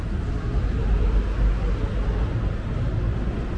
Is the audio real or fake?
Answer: real